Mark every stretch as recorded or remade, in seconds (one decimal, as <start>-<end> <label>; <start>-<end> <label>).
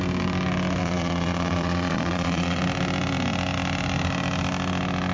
0.0-0.8 recorded; 0.8-2.6 remade; 2.6-5.1 recorded